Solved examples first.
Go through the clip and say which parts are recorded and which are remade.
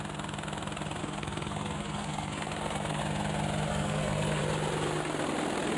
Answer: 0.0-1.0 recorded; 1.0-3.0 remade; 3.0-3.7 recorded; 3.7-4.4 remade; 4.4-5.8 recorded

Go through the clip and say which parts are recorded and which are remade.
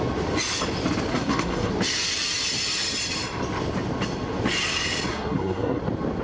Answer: 0.0-1.1 recorded; 1.1-1.7 remade; 1.7-5.1 recorded; 5.1-5.8 remade; 5.8-6.2 recorded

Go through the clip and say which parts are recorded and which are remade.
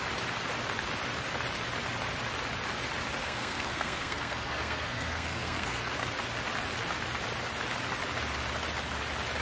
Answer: 0.0-3.2 recorded; 3.2-5.9 remade; 5.9-9.4 recorded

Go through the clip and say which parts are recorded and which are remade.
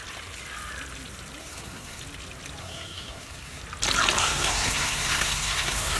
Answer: 0.0-1.4 recorded; 1.4-2.0 remade; 2.0-2.6 recorded; 2.6-3.6 remade; 3.6-4.2 recorded; 4.2-6.0 remade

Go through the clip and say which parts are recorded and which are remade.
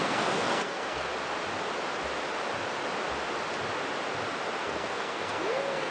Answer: 0.0-1.1 remade; 1.1-4.6 recorded; 4.6-5.9 remade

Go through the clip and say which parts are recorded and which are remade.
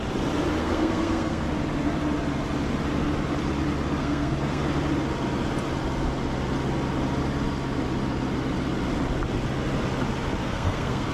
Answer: 0.0-0.6 recorded; 0.6-1.4 remade; 1.4-4.0 recorded; 4.0-4.6 remade; 4.6-10.4 recorded; 10.4-11.1 remade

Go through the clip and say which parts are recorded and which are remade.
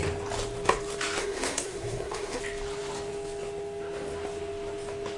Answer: 0.0-1.2 recorded; 1.2-2.4 remade; 2.4-5.2 recorded